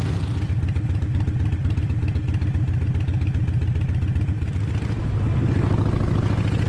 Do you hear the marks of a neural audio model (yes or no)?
no